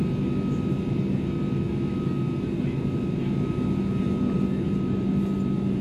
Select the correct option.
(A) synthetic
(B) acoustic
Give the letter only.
B